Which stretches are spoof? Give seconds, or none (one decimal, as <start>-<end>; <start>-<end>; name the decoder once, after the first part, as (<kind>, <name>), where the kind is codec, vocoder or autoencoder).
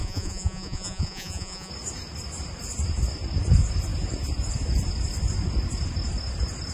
0.0-1.7 (vocoder, Vocos)